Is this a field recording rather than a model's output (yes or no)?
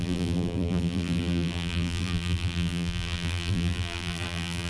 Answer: no